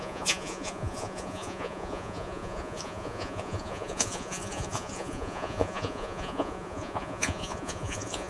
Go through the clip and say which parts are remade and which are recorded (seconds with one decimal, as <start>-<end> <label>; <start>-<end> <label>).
0.0-8.3 remade